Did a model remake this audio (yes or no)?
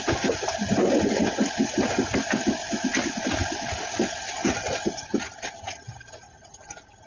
no